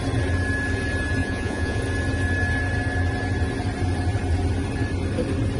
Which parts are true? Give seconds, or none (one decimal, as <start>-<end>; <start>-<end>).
0.0-1.2; 1.8-5.6